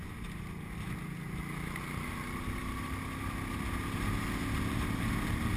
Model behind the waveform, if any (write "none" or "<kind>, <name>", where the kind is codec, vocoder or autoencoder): none